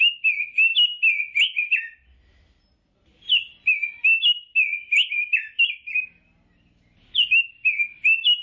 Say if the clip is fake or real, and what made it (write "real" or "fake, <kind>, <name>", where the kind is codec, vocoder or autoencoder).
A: real